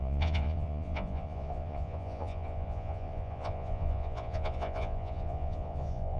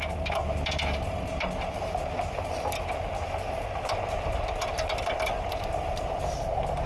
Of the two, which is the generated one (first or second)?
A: first